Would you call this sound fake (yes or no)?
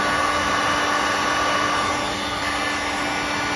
no